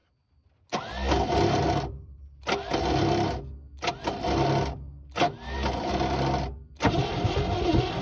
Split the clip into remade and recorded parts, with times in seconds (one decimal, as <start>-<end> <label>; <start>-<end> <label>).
0.0-8.0 recorded